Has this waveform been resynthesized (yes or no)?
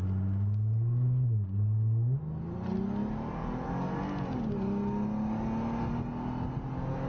no